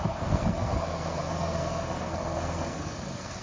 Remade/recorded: remade